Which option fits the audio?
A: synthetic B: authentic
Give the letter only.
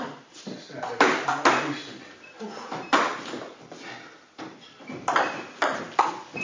B